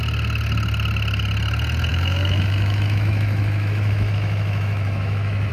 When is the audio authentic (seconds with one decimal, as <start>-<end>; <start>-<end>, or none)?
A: 0.0-1.9